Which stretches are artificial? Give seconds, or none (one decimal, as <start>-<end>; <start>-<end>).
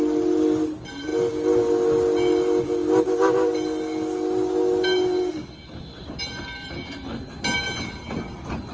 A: none